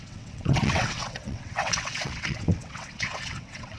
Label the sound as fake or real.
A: fake